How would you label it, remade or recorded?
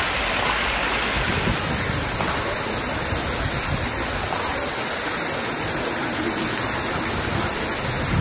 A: recorded